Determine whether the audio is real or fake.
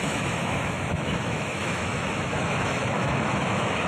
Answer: fake